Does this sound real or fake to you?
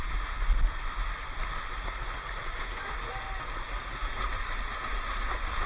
real